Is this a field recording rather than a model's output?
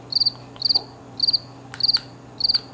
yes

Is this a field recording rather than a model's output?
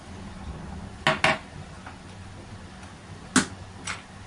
yes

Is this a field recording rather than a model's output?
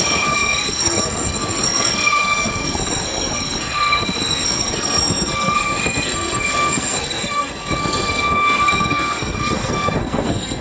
no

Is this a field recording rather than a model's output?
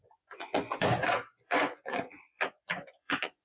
no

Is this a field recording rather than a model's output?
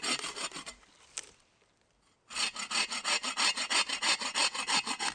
yes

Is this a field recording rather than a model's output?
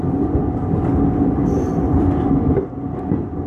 yes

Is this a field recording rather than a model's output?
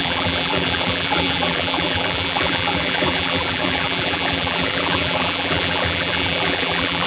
no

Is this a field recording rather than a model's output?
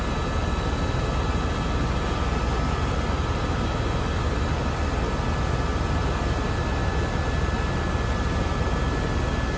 yes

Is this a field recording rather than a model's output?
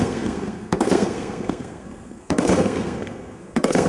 no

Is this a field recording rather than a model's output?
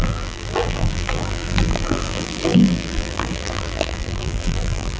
no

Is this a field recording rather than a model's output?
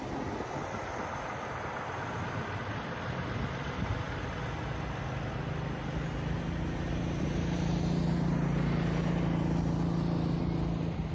yes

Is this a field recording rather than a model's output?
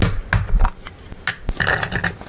yes